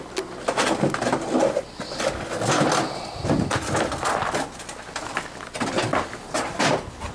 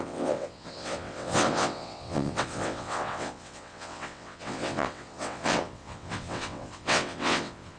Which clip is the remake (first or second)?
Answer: second